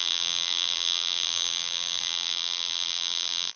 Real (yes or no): no